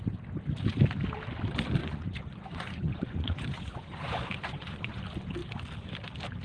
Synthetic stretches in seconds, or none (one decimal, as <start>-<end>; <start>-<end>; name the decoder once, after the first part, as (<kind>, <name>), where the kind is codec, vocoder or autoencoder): 1.8-5.0 (vocoder, Vocos)